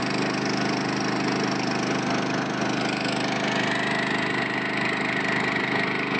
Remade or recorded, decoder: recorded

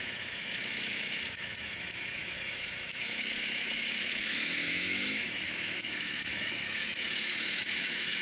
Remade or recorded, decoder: remade, autoencoder, DAC-VAE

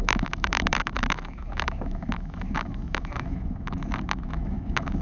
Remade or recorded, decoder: remade, autoencoder, DAC-VAE